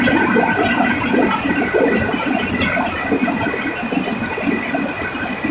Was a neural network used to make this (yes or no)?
no